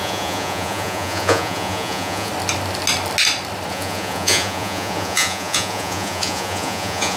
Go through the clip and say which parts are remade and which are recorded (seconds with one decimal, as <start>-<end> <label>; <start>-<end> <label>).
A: 0.0-2.3 remade; 2.3-3.7 recorded; 3.7-7.2 remade